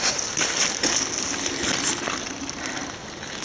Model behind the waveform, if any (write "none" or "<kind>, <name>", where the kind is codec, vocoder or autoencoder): none